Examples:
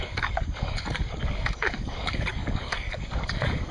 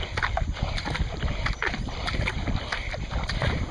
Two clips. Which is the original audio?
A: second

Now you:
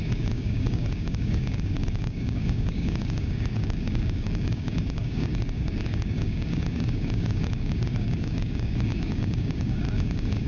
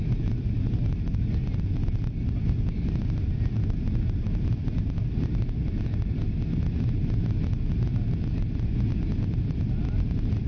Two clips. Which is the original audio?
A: second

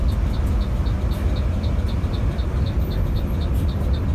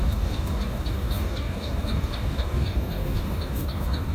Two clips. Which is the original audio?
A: first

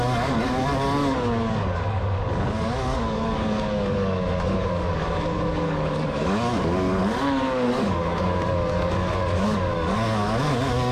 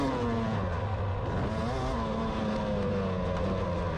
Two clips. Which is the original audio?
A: second